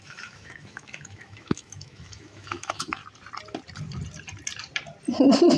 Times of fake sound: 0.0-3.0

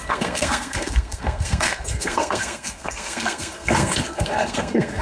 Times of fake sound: 0.0-5.0